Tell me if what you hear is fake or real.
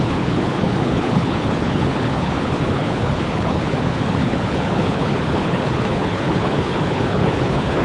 fake